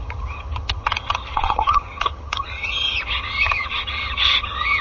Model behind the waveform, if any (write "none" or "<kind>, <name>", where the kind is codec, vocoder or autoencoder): vocoder, HiFi-GAN